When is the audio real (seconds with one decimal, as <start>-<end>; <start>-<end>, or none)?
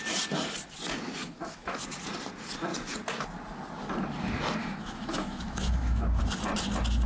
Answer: 0.0-1.2; 1.8-4.6; 6.2-7.1